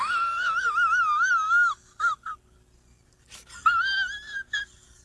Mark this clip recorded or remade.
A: recorded